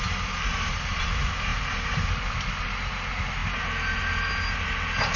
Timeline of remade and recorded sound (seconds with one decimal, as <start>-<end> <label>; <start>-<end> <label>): 0.0-5.2 recorded